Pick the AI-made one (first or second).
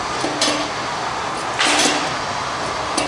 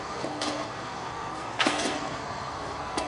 second